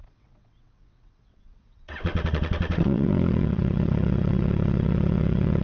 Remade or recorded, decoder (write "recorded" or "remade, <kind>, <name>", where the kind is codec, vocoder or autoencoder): remade, vocoder, WaveNeXt